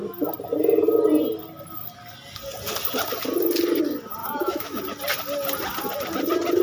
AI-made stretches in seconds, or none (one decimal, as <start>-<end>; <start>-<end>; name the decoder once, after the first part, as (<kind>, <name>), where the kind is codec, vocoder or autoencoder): 4.2-4.8 (autoencoder, DAC-VAE)